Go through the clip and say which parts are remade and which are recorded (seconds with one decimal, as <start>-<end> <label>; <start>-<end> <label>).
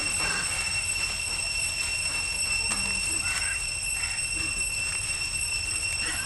0.0-6.3 recorded